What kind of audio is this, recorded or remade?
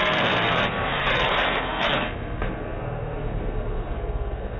remade